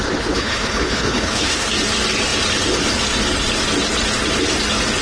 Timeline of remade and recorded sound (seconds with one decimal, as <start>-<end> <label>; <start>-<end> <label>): 0.0-1.7 remade; 1.7-5.0 recorded